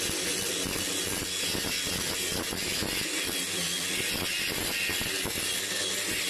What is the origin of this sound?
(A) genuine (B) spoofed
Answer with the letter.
A